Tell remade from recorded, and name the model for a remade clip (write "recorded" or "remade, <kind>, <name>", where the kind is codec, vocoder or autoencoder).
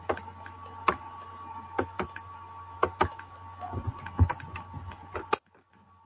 recorded